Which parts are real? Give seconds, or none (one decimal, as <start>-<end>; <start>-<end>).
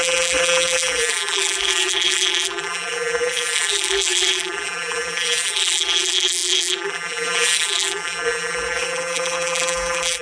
none